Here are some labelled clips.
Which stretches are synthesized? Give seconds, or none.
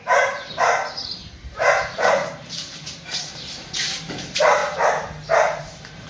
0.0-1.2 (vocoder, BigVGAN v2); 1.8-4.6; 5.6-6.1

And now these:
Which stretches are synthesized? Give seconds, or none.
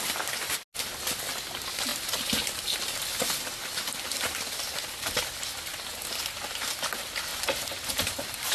7.3-8.5 (vocoder, BigVGAN v2)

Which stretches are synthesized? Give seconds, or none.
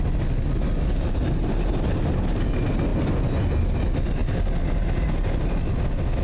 none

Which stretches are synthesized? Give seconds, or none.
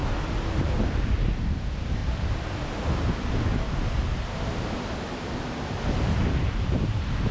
0.5-2.0 (vocoder, BigVGAN v2); 6.0-7.3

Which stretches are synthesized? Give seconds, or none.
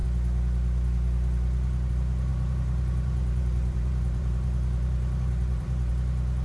2.3-5.9 (vocoder, BigVGAN v2)